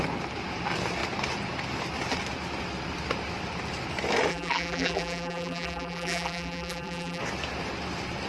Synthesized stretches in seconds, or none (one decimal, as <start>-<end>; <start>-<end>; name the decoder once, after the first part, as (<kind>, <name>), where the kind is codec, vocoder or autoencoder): 4.3-7.2 (vocoder, BigVGAN v2)